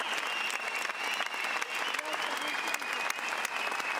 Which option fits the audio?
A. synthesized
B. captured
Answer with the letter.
B